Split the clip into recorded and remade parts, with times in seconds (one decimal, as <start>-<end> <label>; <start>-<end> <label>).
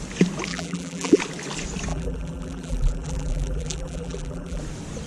0.0-0.5 recorded; 0.5-1.2 remade; 1.2-1.9 recorded; 1.9-4.6 remade; 4.6-5.1 recorded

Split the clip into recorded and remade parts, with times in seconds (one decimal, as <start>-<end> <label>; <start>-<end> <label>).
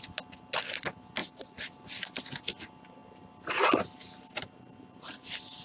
0.0-5.6 recorded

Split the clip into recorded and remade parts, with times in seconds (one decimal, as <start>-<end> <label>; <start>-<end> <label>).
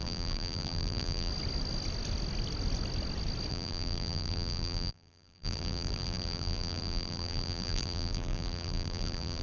0.0-1.3 remade; 1.3-3.5 recorded; 3.5-9.4 remade